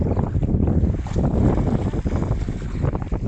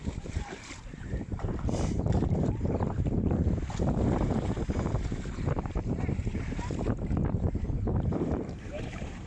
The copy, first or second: second